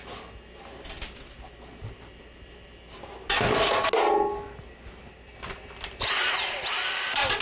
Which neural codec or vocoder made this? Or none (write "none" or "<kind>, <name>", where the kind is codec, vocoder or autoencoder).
none